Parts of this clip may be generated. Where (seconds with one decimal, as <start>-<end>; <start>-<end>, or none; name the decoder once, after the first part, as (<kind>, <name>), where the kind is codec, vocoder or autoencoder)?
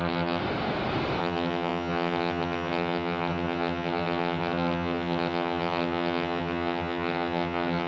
0.0-0.4 (vocoder, HiFi-GAN); 1.2-7.9